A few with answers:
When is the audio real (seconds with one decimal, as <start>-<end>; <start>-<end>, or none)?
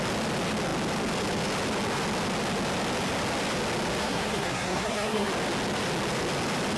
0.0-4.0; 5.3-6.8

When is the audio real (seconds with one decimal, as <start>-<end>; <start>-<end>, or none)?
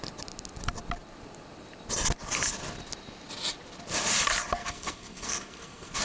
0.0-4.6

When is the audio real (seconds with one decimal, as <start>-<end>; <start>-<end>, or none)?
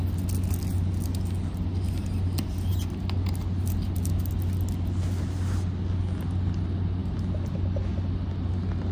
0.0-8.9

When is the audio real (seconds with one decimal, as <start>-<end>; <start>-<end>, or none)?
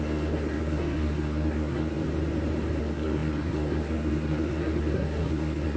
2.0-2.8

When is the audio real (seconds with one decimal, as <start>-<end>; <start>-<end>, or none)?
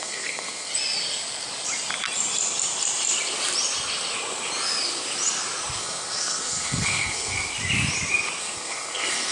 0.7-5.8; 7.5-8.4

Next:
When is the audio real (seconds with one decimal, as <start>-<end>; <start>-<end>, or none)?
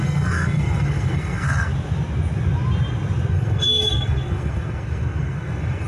1.7-3.3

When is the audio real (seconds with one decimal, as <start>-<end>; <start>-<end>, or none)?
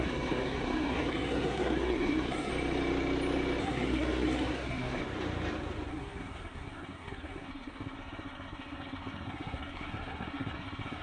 2.5-3.6; 5.0-5.9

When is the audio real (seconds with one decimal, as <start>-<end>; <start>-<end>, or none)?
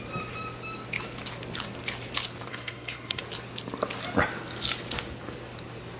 0.0-2.5; 3.2-6.0